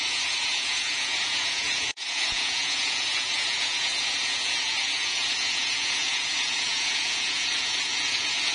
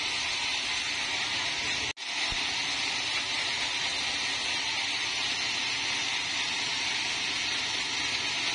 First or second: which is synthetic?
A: first